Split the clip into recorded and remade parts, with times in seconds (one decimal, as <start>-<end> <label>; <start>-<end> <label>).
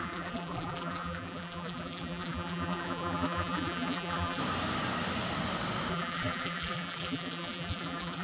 0.0-4.4 remade; 4.4-5.9 recorded; 5.9-8.2 remade